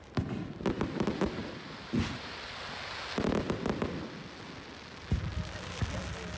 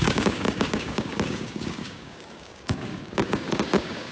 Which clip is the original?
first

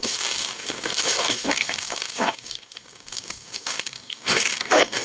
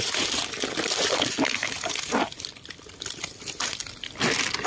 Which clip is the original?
second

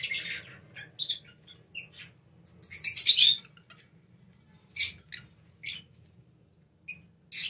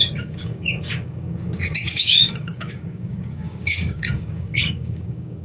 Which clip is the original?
first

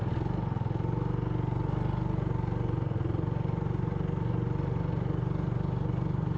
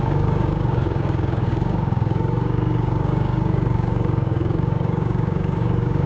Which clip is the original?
first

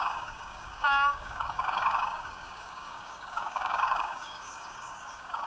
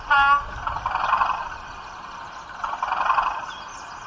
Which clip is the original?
second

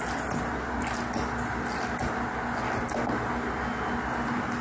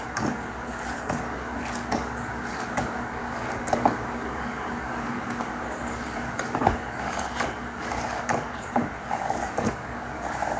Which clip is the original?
first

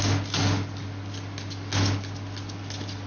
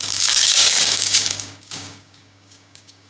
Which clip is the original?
first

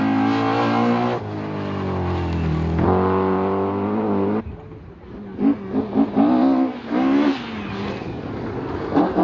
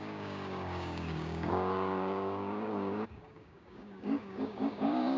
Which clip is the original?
first